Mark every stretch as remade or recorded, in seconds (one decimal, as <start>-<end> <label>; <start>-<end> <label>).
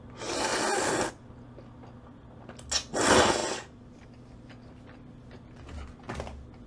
0.0-6.7 recorded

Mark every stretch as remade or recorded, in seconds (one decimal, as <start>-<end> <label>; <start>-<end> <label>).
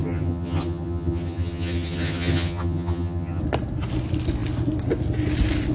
0.0-3.4 remade; 3.4-5.7 recorded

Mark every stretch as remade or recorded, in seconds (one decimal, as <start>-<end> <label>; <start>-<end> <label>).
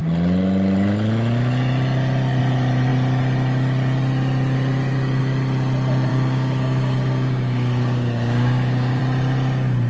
0.0-6.1 recorded; 6.1-9.0 remade; 9.0-9.9 recorded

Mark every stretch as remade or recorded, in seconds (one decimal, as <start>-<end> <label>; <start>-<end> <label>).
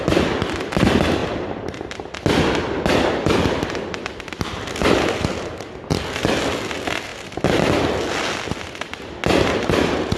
0.0-10.2 recorded